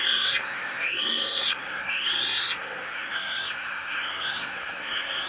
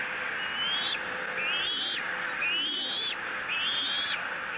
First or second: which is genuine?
second